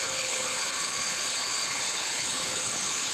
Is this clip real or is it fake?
fake